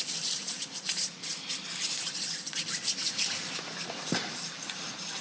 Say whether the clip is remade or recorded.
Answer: remade